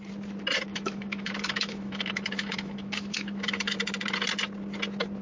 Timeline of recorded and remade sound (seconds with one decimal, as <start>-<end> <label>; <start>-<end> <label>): 0.0-0.7 recorded; 0.7-3.8 remade; 3.8-5.2 recorded